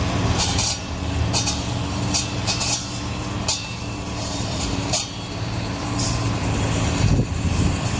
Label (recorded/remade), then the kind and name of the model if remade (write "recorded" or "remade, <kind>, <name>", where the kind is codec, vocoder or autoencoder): remade, vocoder, BigVGAN v2